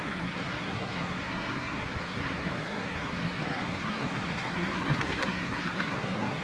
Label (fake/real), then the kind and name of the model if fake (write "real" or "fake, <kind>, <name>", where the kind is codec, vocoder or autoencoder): fake, codec, SNAC